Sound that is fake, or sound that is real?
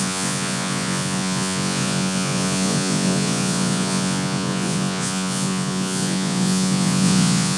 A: fake